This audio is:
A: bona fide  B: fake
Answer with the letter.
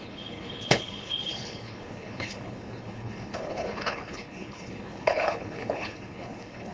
B